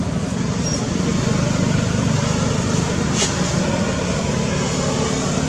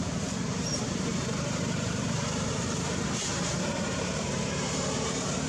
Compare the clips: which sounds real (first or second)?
first